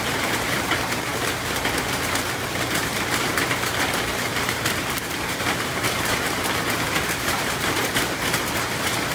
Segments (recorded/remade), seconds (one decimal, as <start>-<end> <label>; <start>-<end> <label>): 0.0-9.1 remade